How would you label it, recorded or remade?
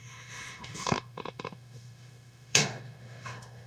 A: remade